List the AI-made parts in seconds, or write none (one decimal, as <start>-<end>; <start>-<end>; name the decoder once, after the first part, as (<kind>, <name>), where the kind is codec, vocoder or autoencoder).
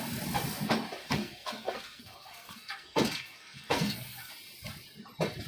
1.0-4.3 (codec, SNAC)